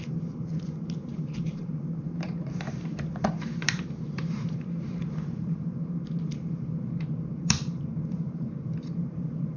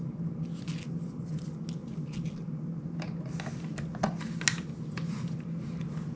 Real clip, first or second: second